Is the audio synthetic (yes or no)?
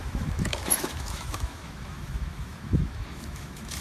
yes